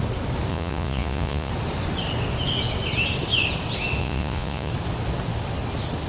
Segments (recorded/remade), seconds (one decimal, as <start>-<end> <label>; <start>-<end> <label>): 0.0-0.5 recorded; 0.5-1.5 remade; 1.5-4.0 recorded; 4.0-4.7 remade; 4.7-6.1 recorded